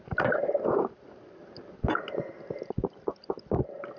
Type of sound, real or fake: real